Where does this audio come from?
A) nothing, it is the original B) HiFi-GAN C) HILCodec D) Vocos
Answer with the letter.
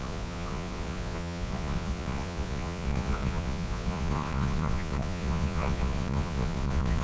D